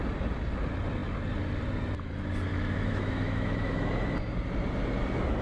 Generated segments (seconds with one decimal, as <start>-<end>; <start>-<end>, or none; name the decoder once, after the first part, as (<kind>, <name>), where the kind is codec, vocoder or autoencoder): 2.5-3.9 (autoencoder, DAC-VAE)